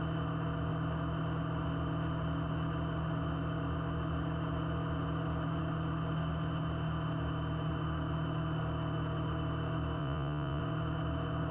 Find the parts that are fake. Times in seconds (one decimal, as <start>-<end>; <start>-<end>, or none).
10.0-10.6